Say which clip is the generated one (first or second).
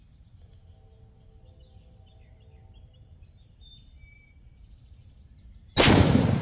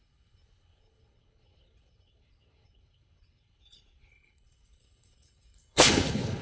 second